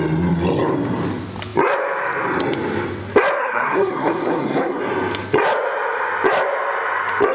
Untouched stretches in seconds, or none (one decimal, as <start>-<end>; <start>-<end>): 0.0-3.4; 4.8-7.3